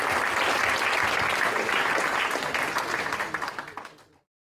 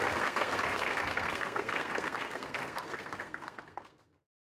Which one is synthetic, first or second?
second